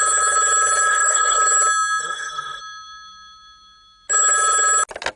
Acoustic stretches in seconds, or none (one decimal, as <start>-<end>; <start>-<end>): 0.0-0.9; 1.4-2.0; 2.6-5.2